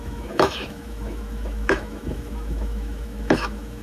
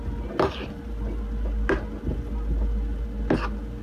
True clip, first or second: second